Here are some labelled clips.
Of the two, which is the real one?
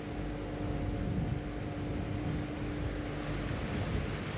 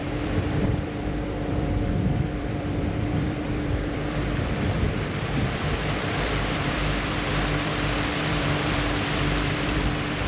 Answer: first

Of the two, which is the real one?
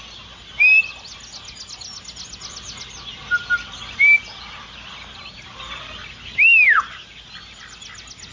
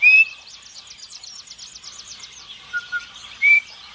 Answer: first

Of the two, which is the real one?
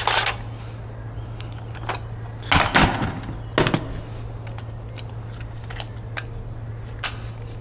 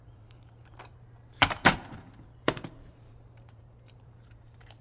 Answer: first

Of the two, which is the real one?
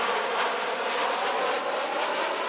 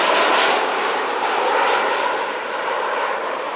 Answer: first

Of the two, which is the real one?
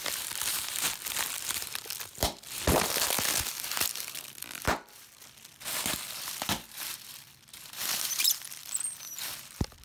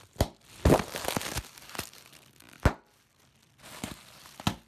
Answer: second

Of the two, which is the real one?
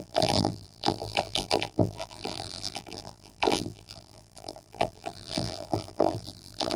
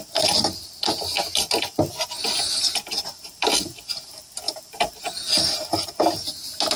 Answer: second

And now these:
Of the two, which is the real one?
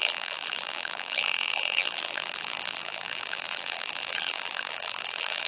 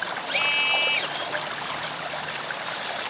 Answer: second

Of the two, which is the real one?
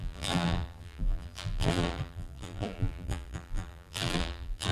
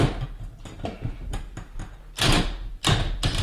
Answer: second